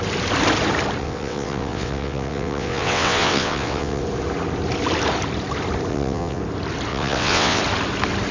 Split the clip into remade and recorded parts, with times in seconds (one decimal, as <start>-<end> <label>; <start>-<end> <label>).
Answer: 0.0-1.0 recorded; 1.0-4.0 remade; 4.0-5.9 recorded; 5.9-6.4 remade; 6.4-6.9 recorded; 6.9-7.6 remade; 7.6-8.3 recorded